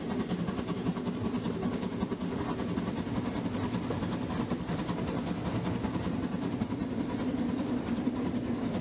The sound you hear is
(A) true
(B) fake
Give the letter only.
A